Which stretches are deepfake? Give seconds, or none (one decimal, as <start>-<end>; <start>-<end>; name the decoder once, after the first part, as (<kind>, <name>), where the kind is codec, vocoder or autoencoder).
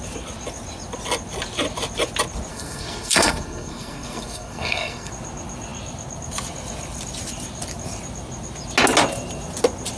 2.5-5.1 (codec, SNAC)